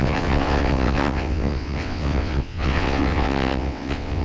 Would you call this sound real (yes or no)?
no